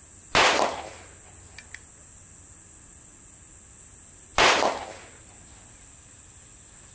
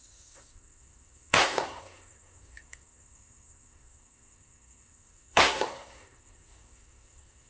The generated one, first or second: second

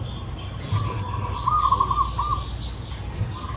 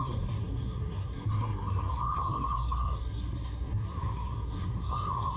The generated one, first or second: second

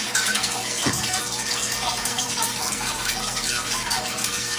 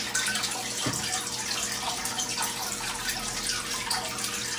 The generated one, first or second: first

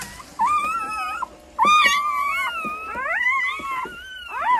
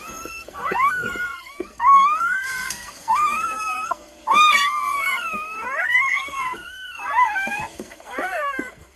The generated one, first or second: second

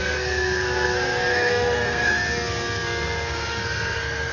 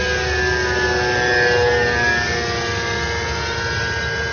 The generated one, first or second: first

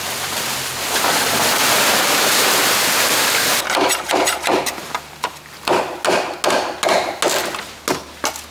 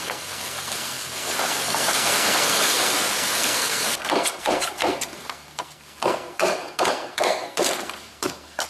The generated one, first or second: second